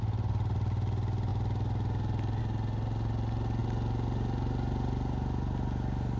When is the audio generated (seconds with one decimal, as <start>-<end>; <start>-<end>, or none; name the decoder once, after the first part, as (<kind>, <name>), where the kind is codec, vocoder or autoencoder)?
none